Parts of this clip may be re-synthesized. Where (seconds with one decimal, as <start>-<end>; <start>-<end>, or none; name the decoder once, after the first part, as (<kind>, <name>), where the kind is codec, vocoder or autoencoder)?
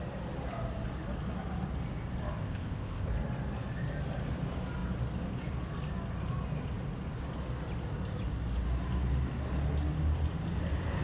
2.4-3.1 (codec, ZipCodec)